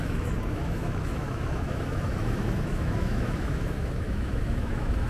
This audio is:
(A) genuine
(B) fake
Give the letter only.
B